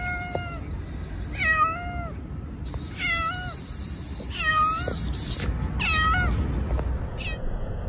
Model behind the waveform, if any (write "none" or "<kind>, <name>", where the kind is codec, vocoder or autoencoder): none